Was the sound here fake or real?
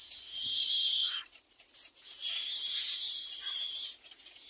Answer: real